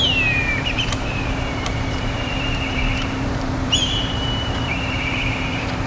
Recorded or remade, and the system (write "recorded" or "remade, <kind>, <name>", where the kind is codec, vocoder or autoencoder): remade, vocoder, BigVGAN v2